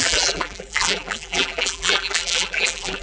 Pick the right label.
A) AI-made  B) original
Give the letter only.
A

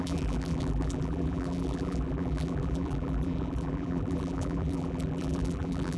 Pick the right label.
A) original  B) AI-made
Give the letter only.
B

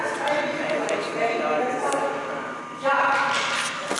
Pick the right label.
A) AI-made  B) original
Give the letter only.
B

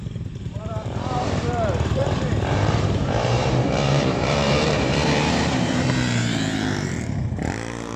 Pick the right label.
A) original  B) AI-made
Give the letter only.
B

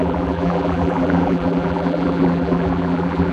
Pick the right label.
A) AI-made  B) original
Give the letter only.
A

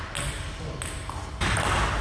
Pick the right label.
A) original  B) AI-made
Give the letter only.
A